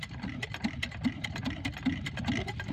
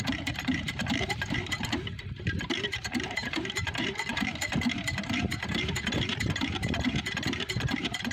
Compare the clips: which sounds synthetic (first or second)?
second